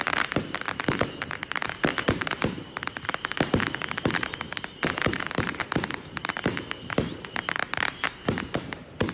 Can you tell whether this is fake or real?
fake